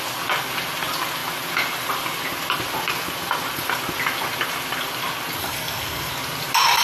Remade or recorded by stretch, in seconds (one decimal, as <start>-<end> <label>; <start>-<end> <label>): 0.0-5.4 recorded; 5.4-6.1 remade; 6.1-6.8 recorded